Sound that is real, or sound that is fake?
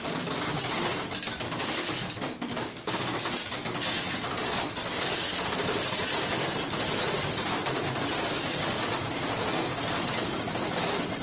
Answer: real